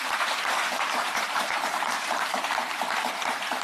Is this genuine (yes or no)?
no